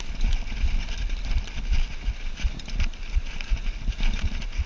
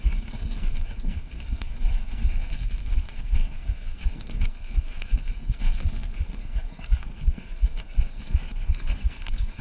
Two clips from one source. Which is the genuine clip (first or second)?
first